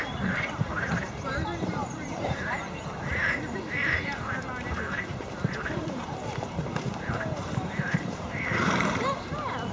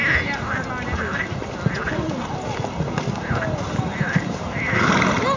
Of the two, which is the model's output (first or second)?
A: first